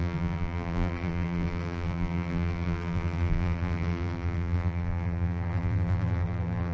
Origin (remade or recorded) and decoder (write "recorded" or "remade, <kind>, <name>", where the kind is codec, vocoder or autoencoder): remade, vocoder, BigVGAN v2